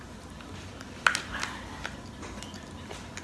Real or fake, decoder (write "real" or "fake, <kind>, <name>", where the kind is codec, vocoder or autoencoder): real